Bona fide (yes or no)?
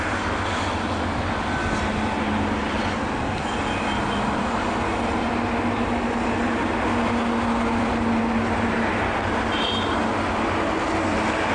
yes